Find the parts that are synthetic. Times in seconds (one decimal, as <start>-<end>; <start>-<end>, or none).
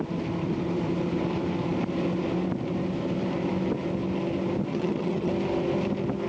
4.7-5.3